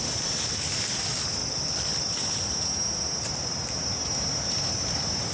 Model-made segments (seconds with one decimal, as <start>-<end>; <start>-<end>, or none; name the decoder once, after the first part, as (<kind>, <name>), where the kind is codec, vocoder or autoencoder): 1.4-2.0 (vocoder, BigVGAN v2)